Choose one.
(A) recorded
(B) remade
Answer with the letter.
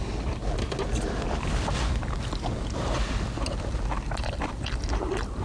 A